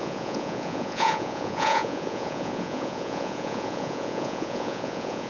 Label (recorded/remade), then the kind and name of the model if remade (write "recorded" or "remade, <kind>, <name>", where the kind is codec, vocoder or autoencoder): remade, vocoder, Vocos